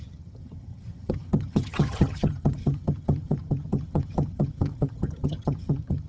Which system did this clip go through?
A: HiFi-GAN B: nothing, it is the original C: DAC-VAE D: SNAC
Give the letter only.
A